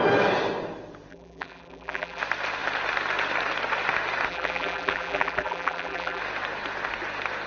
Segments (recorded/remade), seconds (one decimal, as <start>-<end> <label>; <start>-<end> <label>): 0.0-1.1 recorded; 1.1-2.2 remade; 2.2-4.3 recorded; 4.3-6.2 remade; 6.2-7.5 recorded